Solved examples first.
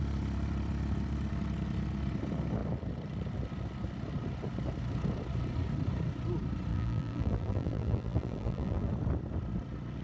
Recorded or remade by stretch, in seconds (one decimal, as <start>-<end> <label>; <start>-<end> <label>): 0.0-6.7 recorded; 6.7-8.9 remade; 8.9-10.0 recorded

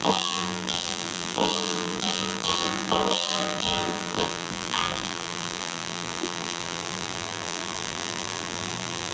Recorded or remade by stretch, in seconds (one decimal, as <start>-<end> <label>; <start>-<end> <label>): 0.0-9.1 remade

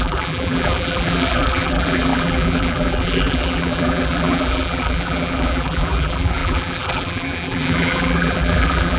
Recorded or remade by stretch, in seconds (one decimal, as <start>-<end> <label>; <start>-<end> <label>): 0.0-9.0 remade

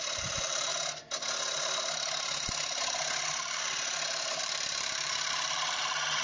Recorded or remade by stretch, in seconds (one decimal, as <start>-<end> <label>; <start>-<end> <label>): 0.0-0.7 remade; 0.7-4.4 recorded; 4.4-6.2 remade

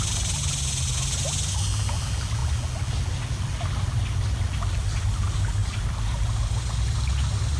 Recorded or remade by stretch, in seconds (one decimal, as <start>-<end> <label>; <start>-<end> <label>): 0.0-5.6 recorded; 5.6-6.7 remade; 6.7-7.6 recorded

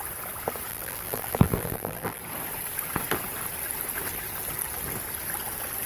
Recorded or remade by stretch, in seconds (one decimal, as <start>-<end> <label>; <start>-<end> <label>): 0.0-0.7 recorded; 0.7-2.2 remade; 2.2-5.9 recorded